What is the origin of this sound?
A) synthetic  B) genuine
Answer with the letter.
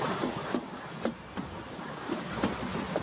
B